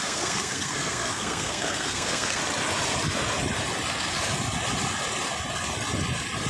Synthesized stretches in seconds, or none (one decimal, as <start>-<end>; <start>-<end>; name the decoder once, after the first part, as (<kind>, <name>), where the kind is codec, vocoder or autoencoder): 0.0-2.4 (codec, SNAC)